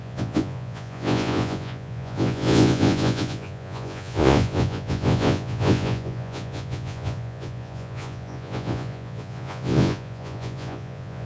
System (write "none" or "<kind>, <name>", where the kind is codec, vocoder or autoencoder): vocoder, Vocos